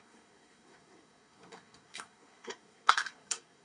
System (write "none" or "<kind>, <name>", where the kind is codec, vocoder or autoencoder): codec, SNAC